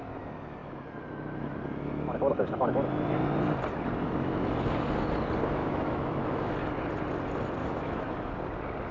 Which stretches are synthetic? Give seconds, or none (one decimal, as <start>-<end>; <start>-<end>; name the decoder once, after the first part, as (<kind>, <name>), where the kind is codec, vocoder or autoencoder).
5.6-6.5 (autoencoder, DAC-VAE); 7.6-8.3